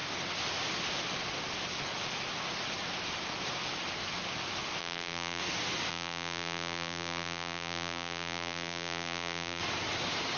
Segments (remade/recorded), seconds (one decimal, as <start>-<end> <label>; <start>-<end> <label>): 0.0-4.8 recorded; 4.8-5.4 remade; 5.4-5.9 recorded; 5.9-9.6 remade; 9.6-10.4 recorded